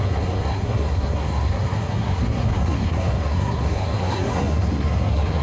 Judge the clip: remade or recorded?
remade